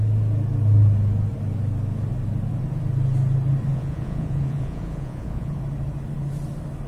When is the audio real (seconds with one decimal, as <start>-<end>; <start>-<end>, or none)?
0.0-3.7; 5.6-6.9